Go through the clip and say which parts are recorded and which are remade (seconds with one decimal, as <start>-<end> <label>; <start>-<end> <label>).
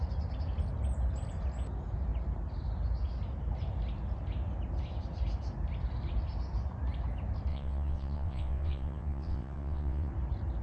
0.0-7.5 recorded; 7.5-10.1 remade; 10.1-10.6 recorded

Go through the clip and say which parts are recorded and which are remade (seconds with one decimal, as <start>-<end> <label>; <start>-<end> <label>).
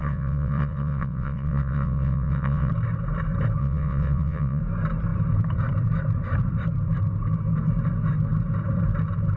0.0-2.7 remade; 2.7-3.6 recorded; 3.6-4.6 remade; 4.6-9.4 recorded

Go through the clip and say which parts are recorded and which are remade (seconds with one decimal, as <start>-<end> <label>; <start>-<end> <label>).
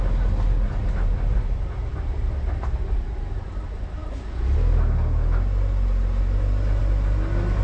0.0-7.6 recorded